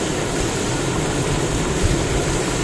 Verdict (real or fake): real